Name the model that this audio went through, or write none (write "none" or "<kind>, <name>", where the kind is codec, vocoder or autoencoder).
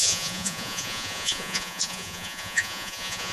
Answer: vocoder, Vocos